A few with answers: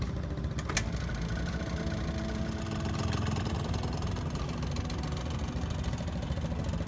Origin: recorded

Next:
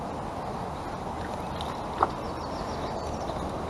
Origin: recorded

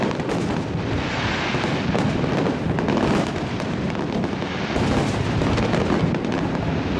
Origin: recorded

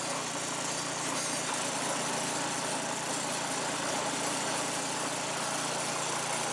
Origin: recorded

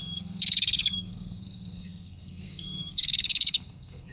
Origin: remade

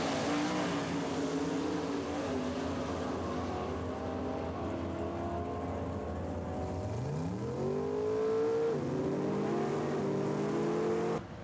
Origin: recorded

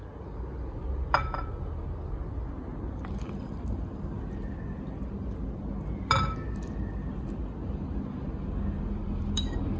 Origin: recorded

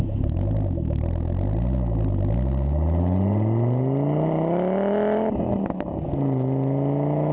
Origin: recorded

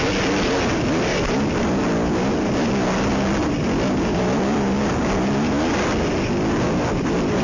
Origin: recorded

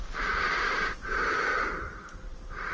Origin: recorded